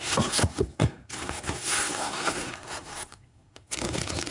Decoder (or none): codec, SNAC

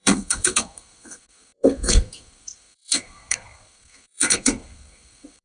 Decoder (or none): codec, SNAC